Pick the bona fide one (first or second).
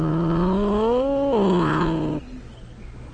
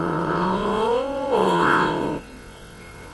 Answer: first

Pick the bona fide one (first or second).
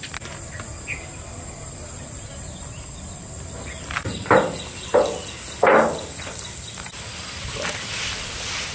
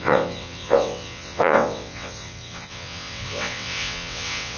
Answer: first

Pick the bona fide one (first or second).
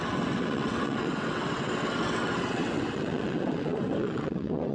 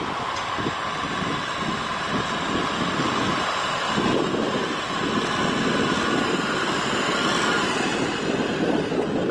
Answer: second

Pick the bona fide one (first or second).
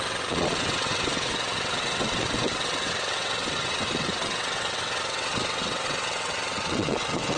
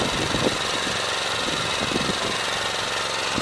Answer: second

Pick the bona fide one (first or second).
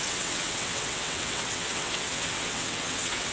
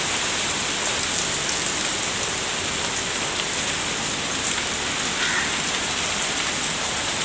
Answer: second